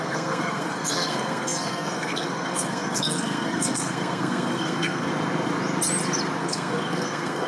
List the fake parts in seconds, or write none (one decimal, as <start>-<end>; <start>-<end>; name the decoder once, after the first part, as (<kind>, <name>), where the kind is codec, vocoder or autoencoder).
0.0-5.1 (codec, SNAC); 6.4-7.5